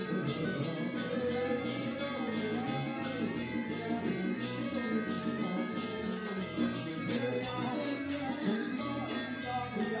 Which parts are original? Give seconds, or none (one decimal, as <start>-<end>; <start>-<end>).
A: 0.0-6.9; 8.8-10.0